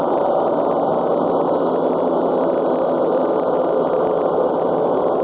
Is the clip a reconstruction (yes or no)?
no